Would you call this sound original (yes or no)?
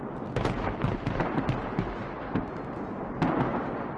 yes